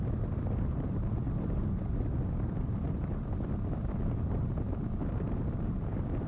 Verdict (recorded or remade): recorded